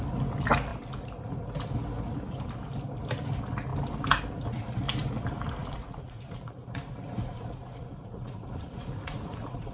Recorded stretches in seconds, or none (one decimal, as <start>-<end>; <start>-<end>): 0.0-5.6